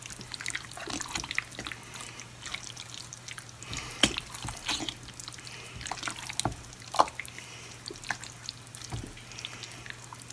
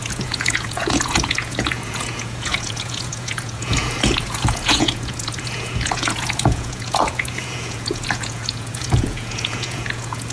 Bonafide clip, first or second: first